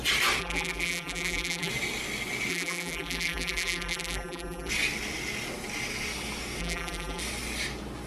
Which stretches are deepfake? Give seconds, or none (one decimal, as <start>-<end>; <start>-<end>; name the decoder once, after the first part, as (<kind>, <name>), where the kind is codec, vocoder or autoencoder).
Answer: 0.4-1.7 (vocoder, BigVGAN v2); 2.5-4.7; 6.6-7.2